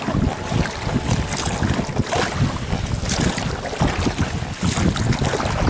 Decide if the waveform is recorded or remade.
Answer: recorded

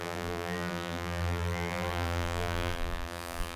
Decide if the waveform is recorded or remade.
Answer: remade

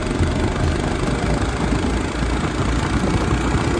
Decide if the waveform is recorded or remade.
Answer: remade